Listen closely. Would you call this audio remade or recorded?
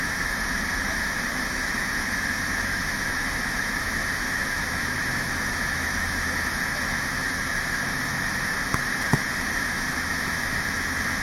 remade